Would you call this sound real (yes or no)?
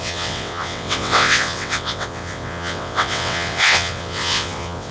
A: no